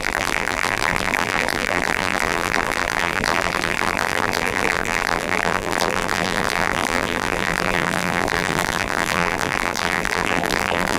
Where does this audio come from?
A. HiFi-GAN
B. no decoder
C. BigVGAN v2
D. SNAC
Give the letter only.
C